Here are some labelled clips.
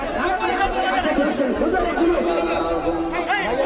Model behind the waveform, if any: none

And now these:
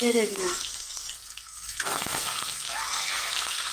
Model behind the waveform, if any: codec, SNAC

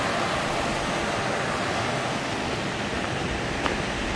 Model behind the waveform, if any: none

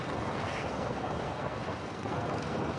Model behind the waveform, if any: codec, SNAC